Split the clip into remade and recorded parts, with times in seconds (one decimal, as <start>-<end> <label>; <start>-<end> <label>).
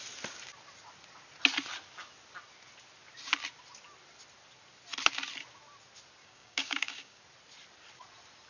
0.0-6.2 recorded; 6.2-7.2 remade; 7.2-8.5 recorded